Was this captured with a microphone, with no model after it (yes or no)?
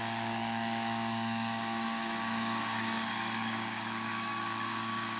no